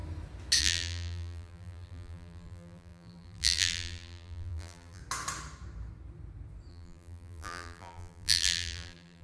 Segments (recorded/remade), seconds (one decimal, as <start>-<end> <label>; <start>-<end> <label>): 0.0-0.6 recorded; 0.6-5.0 remade; 5.0-6.7 recorded; 6.7-9.2 remade